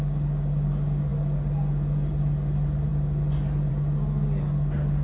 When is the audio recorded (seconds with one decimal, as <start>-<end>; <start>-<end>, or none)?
0.0-5.0